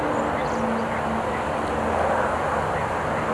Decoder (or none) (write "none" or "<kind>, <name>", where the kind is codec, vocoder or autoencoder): none